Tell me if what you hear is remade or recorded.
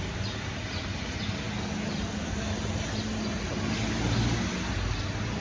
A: recorded